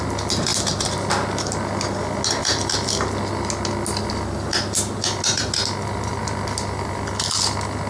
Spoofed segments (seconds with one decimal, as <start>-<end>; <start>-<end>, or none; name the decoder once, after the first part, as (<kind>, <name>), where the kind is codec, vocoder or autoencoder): none